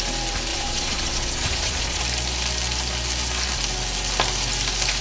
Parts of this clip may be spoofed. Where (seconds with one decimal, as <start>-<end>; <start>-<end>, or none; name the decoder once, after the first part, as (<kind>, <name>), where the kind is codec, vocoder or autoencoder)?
0.5-2.0 (vocoder, Vocos)